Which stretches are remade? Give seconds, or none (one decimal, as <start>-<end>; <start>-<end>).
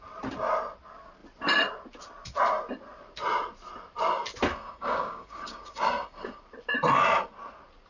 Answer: 4.5-6.4